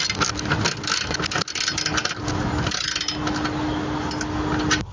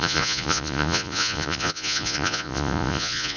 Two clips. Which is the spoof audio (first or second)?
second